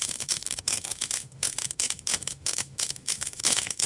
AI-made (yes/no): yes